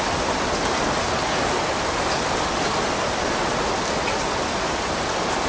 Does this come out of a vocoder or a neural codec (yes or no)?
no